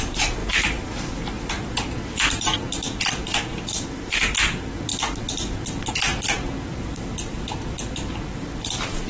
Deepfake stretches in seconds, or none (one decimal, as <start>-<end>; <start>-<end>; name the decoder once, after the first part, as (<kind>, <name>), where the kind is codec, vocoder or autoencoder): 0.0-2.0 (vocoder, BigVGAN v2); 3.1-4.9; 5.9-9.1